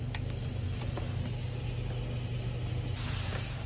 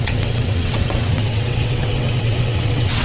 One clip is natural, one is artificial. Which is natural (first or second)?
first